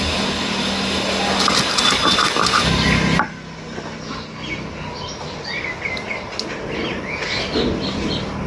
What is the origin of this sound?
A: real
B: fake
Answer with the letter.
A